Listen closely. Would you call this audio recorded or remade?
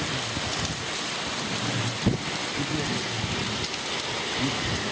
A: recorded